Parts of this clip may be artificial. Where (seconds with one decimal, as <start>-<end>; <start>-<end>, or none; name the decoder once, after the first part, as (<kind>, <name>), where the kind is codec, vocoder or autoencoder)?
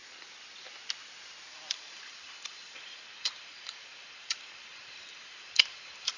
1.5-6.2 (vocoder, BigVGAN v2)